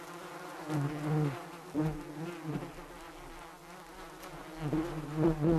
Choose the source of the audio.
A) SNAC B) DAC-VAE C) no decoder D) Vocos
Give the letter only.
C